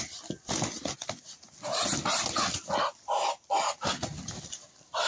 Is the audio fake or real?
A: real